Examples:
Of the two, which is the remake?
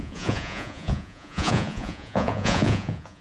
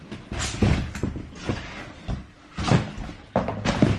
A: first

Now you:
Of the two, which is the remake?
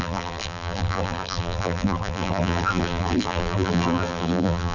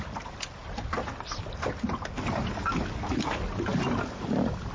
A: first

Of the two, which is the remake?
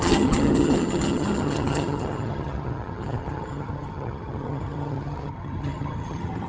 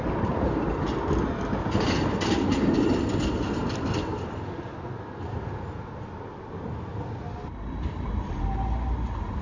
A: first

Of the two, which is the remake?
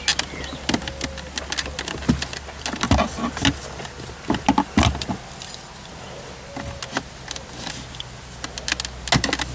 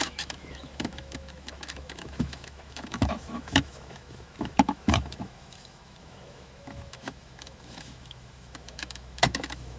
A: second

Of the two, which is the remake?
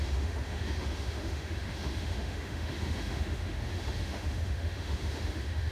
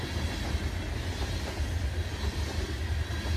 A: first